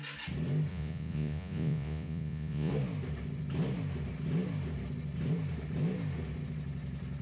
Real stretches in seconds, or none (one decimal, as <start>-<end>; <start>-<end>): 0.0-0.7; 2.7-7.2